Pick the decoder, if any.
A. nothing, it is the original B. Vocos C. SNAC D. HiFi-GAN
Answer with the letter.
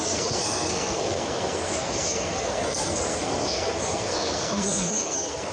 C